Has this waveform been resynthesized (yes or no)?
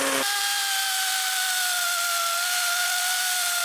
yes